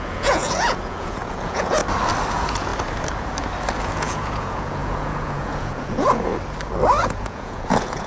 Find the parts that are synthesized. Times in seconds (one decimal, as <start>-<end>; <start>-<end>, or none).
0.0-1.8; 2.3-2.7; 3.8-6.3; 7.0-8.1